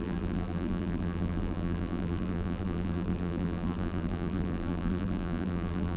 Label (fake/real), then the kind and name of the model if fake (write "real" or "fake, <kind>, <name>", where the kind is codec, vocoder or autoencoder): fake, vocoder, BigVGAN v2